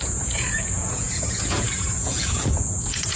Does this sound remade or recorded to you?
remade